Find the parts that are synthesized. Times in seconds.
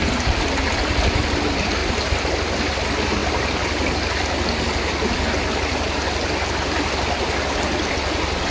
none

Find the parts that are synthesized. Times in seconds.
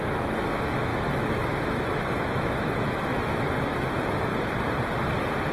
0.0-4.3 (autoencoder, DAC-VAE)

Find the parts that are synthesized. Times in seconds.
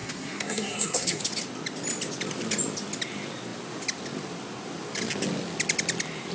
0.0-1.2 (codec, SNAC)